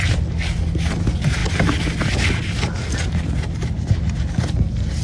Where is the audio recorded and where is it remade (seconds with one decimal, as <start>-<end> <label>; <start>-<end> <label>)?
0.0-5.0 recorded

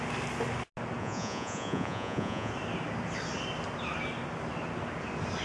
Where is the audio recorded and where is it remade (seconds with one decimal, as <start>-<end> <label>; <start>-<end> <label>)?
0.0-1.0 recorded; 1.0-2.5 remade; 2.5-5.4 recorded

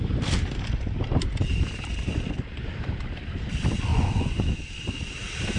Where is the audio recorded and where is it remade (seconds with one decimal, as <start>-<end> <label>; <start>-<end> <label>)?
0.0-3.9 recorded; 3.9-4.5 remade; 4.5-5.6 recorded

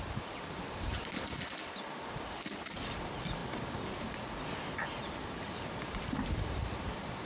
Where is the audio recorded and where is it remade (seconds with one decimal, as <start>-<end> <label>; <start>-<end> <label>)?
0.0-7.3 recorded

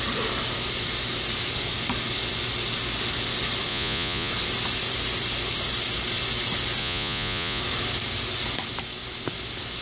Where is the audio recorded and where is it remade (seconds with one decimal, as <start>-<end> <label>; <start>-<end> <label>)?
0.0-3.7 recorded; 3.7-4.3 remade; 4.3-6.8 recorded; 6.8-7.6 remade; 7.6-9.8 recorded

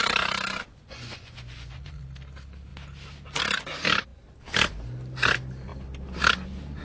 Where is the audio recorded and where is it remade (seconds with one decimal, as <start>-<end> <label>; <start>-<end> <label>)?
0.0-0.7 recorded; 0.7-2.0 remade; 2.0-6.8 recorded